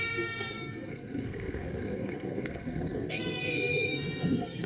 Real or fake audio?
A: fake